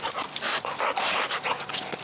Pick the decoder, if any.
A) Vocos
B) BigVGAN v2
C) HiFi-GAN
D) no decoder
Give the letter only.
D